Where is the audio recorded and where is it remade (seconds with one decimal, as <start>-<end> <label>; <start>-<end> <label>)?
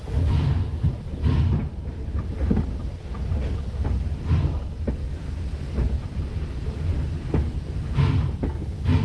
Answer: 0.0-9.0 recorded